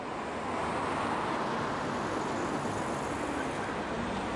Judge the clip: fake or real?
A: real